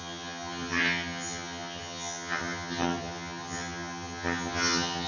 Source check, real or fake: fake